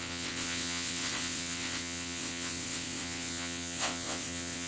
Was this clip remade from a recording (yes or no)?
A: yes